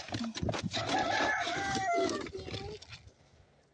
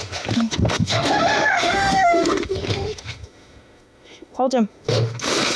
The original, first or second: first